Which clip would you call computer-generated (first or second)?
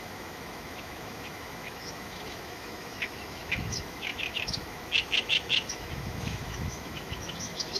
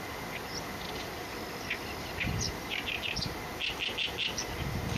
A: first